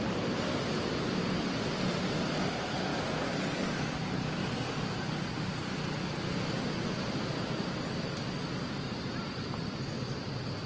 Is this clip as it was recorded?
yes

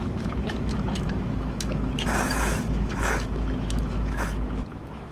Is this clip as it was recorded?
no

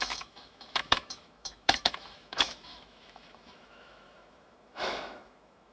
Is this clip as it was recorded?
no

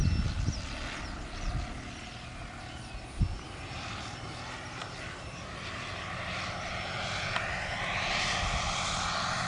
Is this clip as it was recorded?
yes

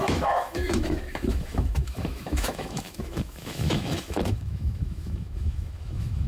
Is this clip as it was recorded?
no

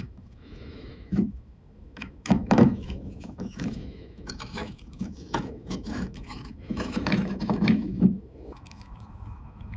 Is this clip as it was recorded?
no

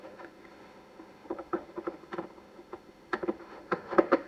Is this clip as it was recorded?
no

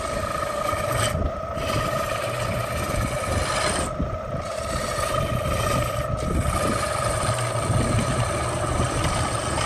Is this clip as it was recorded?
yes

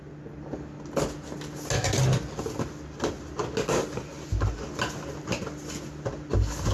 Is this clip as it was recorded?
yes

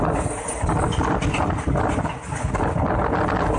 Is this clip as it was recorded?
yes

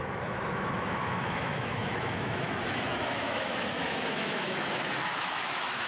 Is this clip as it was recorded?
no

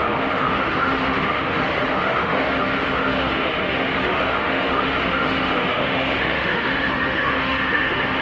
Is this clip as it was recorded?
no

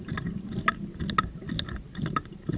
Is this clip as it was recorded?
yes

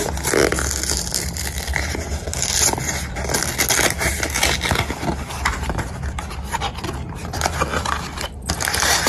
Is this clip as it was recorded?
yes